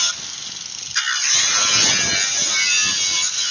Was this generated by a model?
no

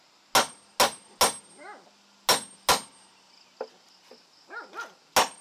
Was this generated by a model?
no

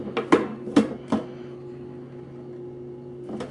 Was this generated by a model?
no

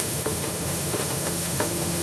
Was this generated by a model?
yes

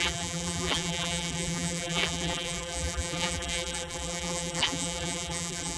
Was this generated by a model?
yes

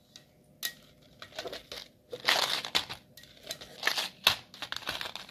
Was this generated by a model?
no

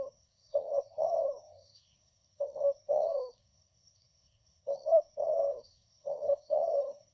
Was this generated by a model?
yes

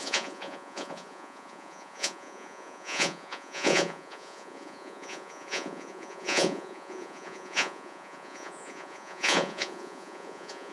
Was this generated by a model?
yes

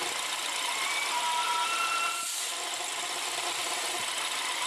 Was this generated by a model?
no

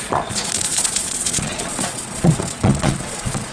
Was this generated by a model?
yes